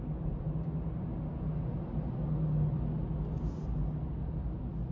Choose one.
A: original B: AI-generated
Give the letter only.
A